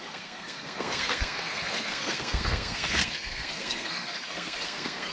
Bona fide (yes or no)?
no